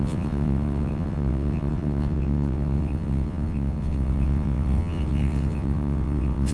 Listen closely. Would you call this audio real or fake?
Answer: fake